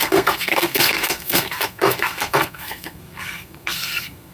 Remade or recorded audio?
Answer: remade